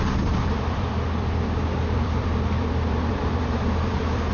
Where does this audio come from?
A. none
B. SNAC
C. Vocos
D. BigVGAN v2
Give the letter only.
D